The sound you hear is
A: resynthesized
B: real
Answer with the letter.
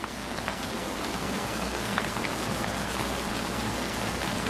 A